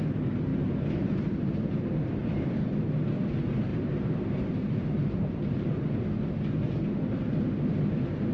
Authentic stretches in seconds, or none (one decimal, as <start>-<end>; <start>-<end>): 0.0-0.5; 1.8-2.2; 2.7-3.7; 6.0-8.3